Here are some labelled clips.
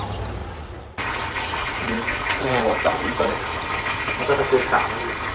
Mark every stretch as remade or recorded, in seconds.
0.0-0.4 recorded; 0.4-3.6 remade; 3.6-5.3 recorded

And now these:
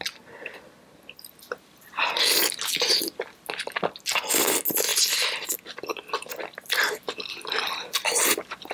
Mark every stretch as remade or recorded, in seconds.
0.0-8.7 recorded

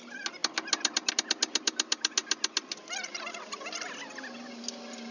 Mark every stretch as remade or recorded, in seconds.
0.0-5.1 recorded

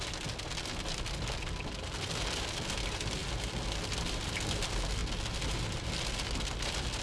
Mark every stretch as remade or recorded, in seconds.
0.0-7.0 recorded